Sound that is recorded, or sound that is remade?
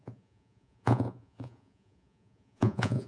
remade